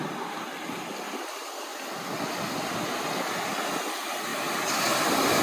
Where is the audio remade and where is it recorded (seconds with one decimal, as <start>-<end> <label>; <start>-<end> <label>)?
0.0-5.4 recorded